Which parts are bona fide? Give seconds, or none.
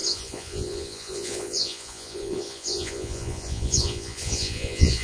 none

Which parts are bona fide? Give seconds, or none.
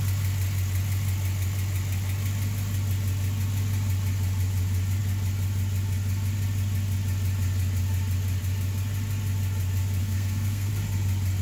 0.0-10.0; 10.7-11.4